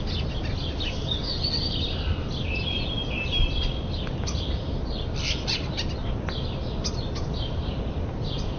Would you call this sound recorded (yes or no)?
yes